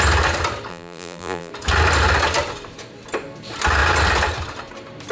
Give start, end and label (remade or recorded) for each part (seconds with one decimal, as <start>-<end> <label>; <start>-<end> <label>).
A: 0.0-0.7 recorded; 0.7-1.5 remade; 1.5-5.1 recorded